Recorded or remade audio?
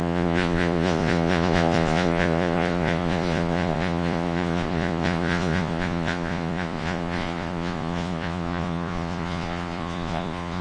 remade